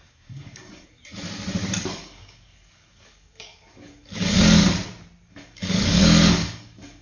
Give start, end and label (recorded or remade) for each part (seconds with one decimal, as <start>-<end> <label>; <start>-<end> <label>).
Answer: 0.0-1.0 remade; 1.0-1.8 recorded; 1.8-4.6 remade; 4.6-5.3 recorded; 5.3-7.0 remade